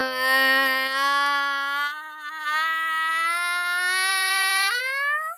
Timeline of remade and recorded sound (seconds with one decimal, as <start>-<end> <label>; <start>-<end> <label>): 0.0-4.1 recorded; 4.1-4.8 remade; 4.8-5.4 recorded